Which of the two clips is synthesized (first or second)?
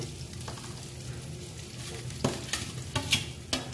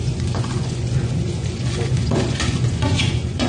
second